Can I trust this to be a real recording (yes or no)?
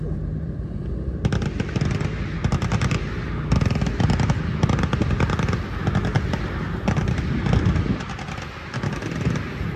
yes